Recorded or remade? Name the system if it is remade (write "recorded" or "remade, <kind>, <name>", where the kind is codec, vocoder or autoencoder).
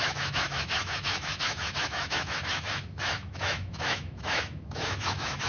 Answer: remade, autoencoder, DAC-VAE